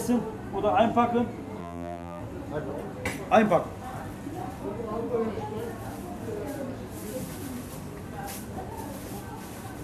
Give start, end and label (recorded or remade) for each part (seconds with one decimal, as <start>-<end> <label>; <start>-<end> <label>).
0.0-1.6 recorded; 1.6-2.2 remade; 2.2-9.8 recorded